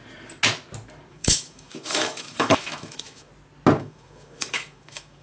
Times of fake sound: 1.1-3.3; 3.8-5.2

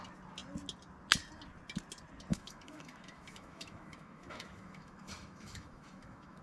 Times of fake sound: 2.3-6.4

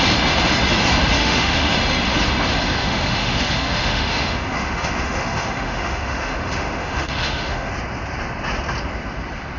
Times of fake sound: 1.2-1.7; 2.8-7.7

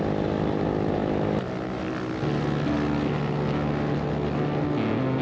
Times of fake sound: none

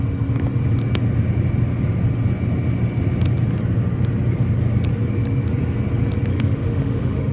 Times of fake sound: 6.3-7.3

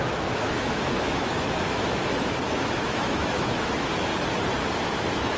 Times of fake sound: 0.0-4.1; 4.8-5.4

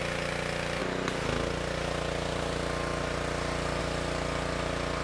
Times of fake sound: none

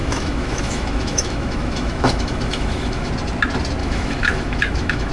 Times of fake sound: 0.0-3.1; 3.8-5.1